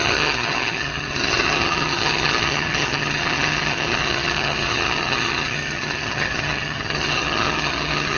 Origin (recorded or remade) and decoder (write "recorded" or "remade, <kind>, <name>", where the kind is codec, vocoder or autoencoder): remade, vocoder, HiFi-GAN